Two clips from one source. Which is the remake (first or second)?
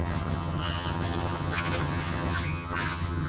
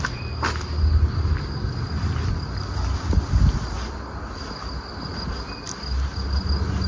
first